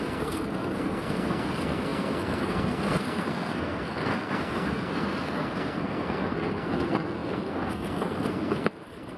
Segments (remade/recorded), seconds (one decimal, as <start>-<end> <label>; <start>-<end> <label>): 0.0-9.2 remade